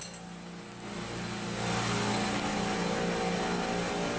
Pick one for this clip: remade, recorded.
recorded